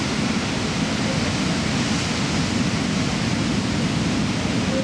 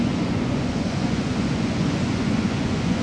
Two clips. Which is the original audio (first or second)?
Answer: first